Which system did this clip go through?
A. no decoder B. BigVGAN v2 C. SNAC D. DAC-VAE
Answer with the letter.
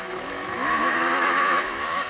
D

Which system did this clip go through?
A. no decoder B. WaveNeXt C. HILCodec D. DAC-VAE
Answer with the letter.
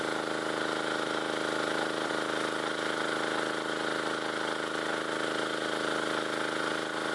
A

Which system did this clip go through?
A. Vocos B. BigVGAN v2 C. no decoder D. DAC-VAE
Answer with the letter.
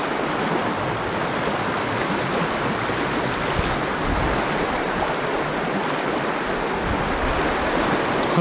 C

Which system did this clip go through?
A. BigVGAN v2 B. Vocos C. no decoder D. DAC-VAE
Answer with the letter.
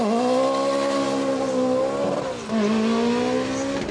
C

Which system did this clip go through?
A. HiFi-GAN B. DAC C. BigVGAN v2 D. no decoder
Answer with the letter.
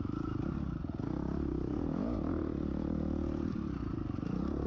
C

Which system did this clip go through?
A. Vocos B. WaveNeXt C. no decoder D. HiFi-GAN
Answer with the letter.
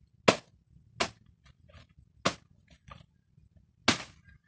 C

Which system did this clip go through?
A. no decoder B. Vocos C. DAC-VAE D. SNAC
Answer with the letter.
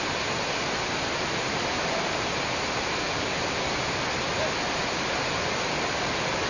A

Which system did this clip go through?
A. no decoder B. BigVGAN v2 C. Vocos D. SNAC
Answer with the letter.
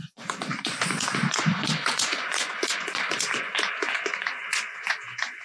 C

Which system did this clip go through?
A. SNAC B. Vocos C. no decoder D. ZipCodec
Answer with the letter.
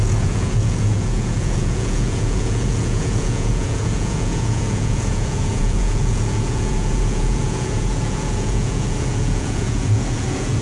B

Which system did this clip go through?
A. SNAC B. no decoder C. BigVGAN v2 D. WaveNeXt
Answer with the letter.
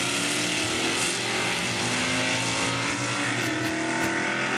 B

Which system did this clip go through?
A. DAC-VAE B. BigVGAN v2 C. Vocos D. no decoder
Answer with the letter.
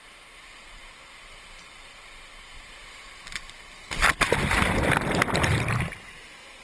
D